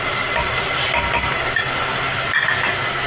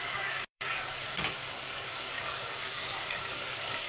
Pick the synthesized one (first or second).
second